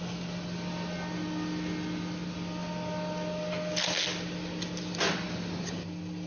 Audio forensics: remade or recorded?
recorded